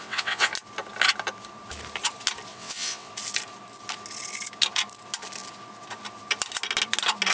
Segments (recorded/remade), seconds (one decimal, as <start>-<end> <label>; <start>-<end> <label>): 0.0-0.5 remade; 0.5-2.5 recorded; 2.5-3.1 remade; 3.1-7.3 recorded

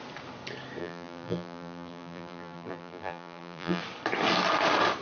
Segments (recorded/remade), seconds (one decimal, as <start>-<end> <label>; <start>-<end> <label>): 0.0-0.8 recorded; 0.8-3.8 remade; 3.8-5.0 recorded

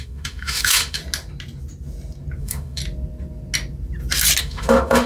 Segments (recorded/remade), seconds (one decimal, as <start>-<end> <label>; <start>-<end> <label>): 0.0-1.0 remade; 1.0-2.4 recorded; 2.4-2.8 remade; 2.8-4.4 recorded; 4.4-5.1 remade

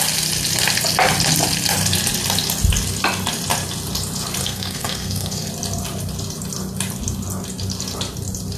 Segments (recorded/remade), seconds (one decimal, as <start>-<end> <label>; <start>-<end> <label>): 0.0-4.4 recorded; 4.4-5.5 remade; 5.5-8.6 recorded

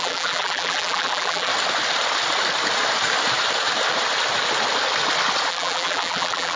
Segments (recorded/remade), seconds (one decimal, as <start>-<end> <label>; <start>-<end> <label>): 0.0-1.5 remade; 1.5-5.5 recorded; 5.5-6.6 remade

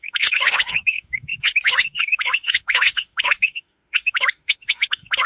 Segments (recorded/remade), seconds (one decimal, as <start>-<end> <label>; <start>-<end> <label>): 0.0-5.3 remade